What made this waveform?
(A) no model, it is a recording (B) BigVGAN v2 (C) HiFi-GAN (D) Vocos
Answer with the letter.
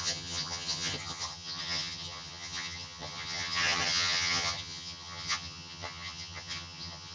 C